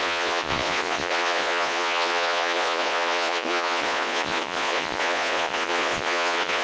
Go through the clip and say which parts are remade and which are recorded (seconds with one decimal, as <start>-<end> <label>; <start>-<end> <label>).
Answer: 0.0-6.6 remade